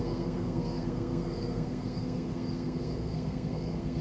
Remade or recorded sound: remade